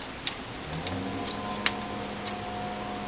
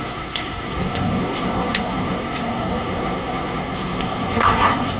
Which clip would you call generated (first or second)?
second